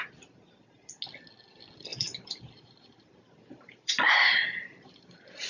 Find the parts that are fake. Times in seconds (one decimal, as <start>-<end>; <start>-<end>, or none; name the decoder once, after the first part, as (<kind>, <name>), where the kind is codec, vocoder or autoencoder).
1.9-5.5 (vocoder, BigVGAN v2)